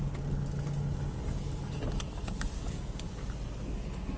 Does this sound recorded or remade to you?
recorded